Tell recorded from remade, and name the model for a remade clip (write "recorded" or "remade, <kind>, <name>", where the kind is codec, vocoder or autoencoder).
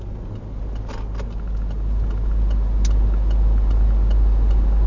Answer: recorded